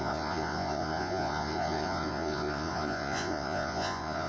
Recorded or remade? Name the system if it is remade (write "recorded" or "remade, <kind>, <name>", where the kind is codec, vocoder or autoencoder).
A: remade, vocoder, Vocos